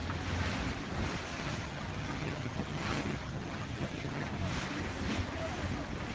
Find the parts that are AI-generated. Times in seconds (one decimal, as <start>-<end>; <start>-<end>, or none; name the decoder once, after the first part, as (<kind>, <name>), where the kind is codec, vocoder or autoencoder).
1.3-4.3 (vocoder, HiFi-GAN)

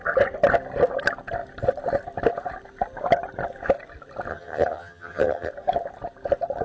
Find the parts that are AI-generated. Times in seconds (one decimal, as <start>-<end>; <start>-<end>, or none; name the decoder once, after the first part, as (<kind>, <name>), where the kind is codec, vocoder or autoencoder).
4.3-5.5 (vocoder, HiFi-GAN)

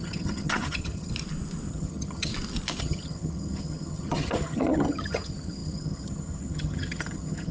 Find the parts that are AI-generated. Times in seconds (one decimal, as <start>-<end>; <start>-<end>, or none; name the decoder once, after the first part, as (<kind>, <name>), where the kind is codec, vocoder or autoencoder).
0.0-1.1 (vocoder, HiFi-GAN); 1.7-2.3; 2.8-7.5

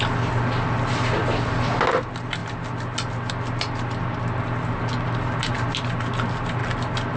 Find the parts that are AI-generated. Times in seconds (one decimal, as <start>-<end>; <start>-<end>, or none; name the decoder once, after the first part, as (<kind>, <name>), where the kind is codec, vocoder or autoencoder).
none

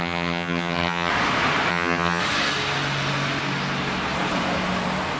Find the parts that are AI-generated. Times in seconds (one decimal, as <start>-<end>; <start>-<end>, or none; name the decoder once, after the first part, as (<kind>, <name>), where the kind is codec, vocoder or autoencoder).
0.0-1.1 (vocoder, HiFi-GAN); 1.7-2.2